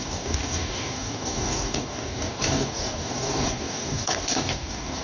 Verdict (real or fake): fake